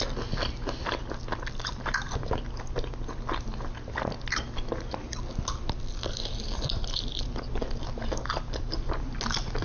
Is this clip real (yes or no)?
yes